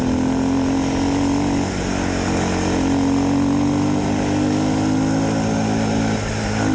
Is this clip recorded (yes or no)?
yes